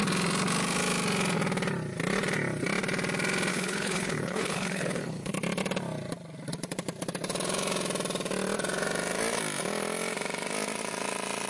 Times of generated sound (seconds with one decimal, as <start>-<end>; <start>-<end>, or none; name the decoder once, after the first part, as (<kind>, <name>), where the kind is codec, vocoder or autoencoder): 3.5-5.3 (codec, HILCodec)